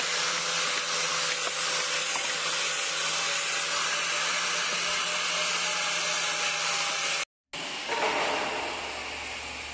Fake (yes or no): no